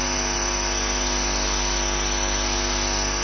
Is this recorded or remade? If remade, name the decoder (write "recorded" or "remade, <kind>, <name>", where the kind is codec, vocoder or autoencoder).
recorded